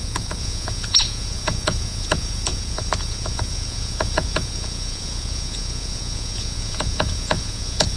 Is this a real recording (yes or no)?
no